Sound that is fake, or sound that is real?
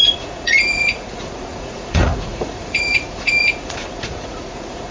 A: fake